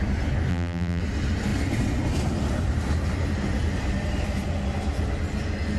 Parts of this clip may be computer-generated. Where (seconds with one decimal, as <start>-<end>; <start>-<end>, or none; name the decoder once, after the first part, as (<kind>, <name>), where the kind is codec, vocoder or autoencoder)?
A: 0.5-1.0 (vocoder, BigVGAN v2)